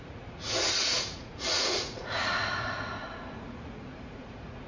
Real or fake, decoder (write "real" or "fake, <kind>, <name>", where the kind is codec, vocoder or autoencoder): fake, vocoder, Vocos